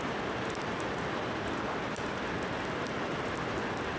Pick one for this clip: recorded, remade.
recorded